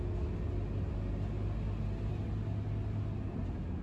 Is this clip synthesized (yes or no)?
no